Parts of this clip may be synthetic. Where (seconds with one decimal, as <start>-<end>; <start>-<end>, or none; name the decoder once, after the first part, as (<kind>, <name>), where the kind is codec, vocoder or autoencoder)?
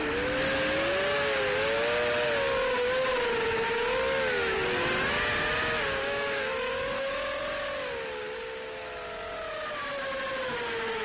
6.0-7.4 (autoencoder, DAC-VAE)